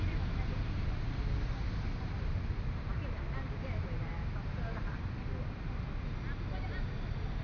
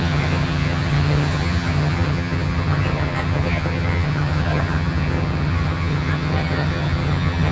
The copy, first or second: second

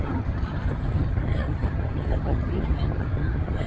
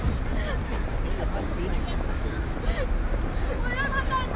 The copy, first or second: first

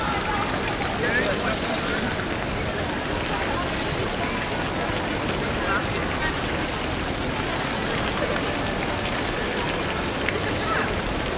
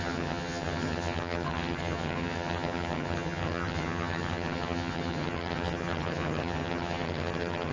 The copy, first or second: second